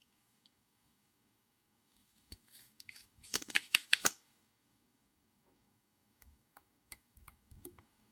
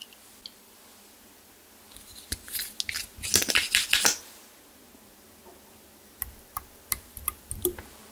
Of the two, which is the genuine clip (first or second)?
second